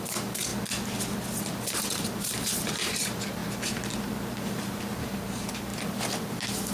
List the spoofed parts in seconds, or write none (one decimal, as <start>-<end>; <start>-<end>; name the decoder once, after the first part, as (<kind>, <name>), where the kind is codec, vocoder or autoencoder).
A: 0.0-0.5 (vocoder, BigVGAN v2); 1.7-3.4; 5.0-5.7